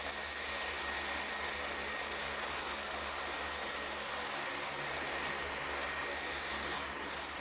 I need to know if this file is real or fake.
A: real